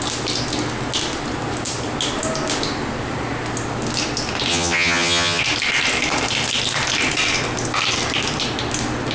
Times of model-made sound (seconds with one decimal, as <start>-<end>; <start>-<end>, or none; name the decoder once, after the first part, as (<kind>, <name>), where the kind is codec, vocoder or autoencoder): 4.5-5.4 (vocoder, HiFi-GAN)